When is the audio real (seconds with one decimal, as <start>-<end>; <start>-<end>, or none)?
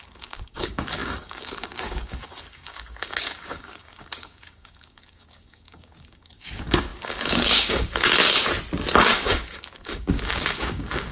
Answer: 8.2-9.0